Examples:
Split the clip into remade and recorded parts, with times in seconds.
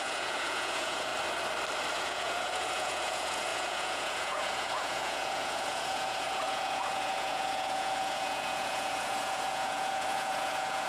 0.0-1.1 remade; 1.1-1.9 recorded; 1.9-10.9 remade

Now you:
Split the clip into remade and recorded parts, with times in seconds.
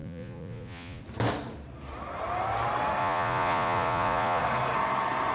0.0-1.0 remade; 1.0-3.0 recorded; 3.0-4.4 remade; 4.4-5.3 recorded